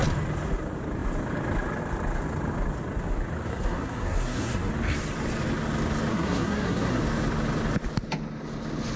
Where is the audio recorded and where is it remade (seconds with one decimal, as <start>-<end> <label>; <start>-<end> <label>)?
0.0-3.5 recorded; 3.5-4.7 remade; 4.7-6.1 recorded; 6.1-7.0 remade; 7.0-9.0 recorded